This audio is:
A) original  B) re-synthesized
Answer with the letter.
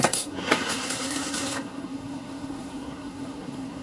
B